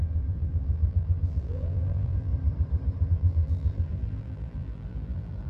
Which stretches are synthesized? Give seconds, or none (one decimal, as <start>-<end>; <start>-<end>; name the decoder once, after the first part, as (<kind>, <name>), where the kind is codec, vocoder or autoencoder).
0.0-2.3 (vocoder, BigVGAN v2); 3.1-5.5